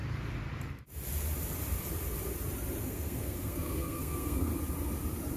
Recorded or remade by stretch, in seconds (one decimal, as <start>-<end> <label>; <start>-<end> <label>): 0.0-2.8 recorded; 2.8-4.5 remade; 4.5-5.4 recorded